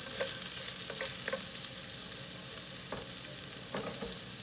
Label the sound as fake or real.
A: real